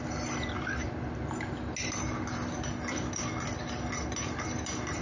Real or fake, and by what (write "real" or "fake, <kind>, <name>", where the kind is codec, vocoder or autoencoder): real